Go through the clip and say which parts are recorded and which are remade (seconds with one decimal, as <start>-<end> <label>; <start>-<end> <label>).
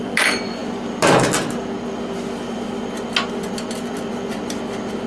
0.0-0.6 remade; 0.6-3.7 recorded; 3.7-5.1 remade